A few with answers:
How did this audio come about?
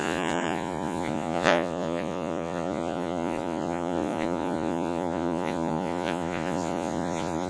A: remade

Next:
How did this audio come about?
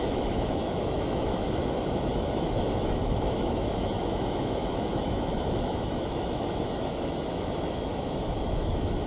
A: remade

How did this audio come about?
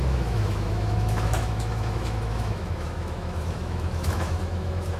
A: remade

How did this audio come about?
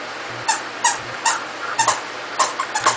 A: recorded